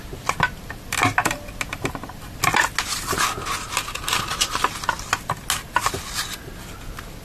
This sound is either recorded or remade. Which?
recorded